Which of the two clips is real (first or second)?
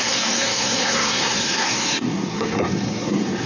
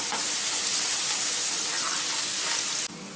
second